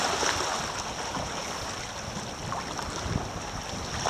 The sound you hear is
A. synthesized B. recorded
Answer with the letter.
B